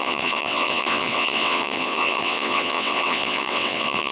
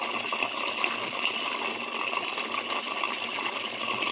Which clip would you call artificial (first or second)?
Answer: first